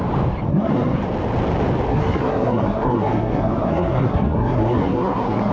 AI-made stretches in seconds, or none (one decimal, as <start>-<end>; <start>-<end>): 0.5-1.0; 1.9-5.5